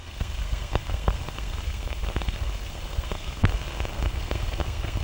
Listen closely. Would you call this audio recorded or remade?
remade